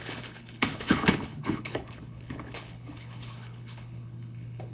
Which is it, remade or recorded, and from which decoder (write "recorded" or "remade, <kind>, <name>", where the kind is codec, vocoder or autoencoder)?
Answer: remade, codec, HILCodec